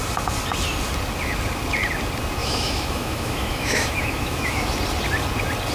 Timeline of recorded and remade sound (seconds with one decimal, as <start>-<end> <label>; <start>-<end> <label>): 0.0-2.4 recorded; 2.4-4.7 remade; 4.7-5.7 recorded